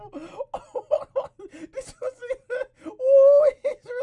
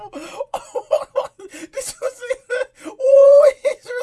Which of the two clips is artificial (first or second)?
second